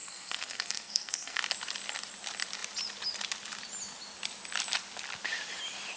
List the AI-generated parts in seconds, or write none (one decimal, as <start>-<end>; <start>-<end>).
0.0-1.4